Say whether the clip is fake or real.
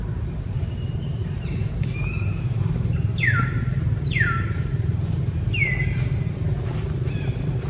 fake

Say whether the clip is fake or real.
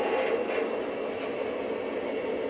real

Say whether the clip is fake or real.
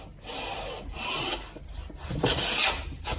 fake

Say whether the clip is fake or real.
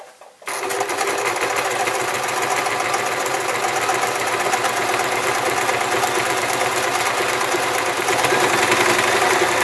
real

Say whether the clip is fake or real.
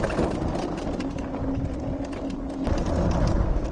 real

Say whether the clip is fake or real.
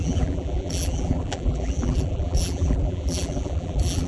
fake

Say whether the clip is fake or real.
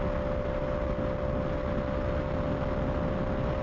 real